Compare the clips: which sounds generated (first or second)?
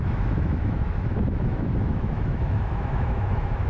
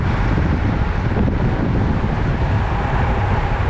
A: first